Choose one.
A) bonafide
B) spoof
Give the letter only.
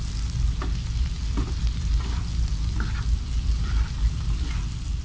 A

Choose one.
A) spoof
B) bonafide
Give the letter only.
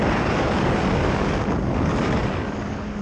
A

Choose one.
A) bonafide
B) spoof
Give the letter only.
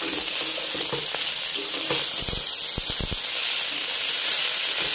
A